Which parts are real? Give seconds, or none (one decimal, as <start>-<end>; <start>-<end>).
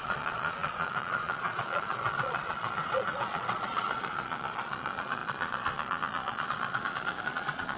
none